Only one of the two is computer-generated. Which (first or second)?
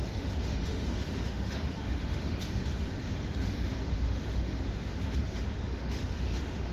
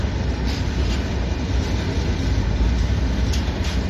first